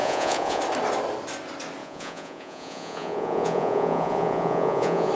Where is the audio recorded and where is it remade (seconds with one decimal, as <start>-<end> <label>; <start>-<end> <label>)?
0.0-0.6 remade; 0.6-1.8 recorded; 1.8-5.1 remade